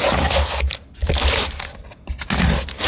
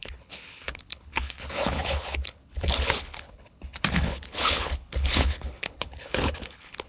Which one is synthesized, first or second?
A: second